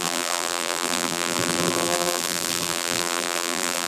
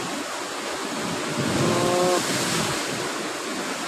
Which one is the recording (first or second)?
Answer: second